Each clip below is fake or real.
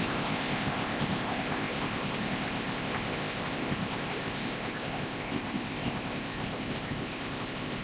fake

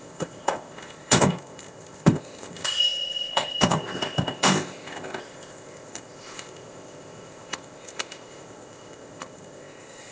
fake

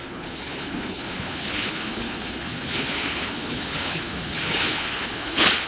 fake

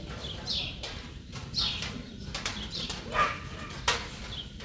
fake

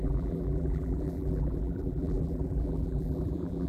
fake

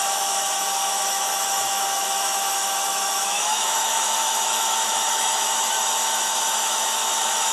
fake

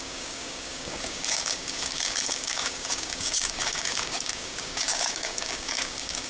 fake